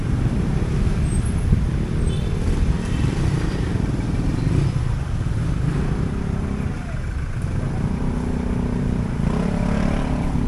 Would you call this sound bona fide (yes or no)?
no